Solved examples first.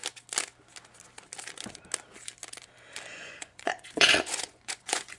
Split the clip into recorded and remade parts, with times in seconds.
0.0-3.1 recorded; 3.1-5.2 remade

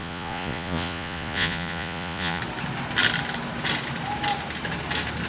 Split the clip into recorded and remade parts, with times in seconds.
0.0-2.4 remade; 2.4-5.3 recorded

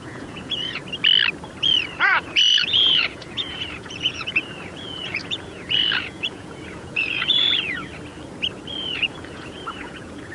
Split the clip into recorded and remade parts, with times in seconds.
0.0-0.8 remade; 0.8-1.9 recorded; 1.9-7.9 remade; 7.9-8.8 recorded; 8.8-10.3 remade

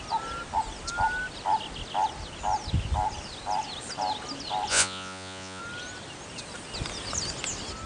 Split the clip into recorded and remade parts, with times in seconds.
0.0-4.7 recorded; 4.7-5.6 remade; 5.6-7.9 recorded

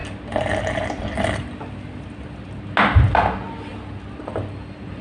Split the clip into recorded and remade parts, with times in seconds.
0.0-5.0 recorded